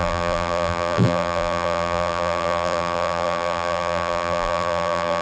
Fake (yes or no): yes